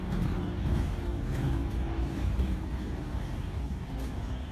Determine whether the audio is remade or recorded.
remade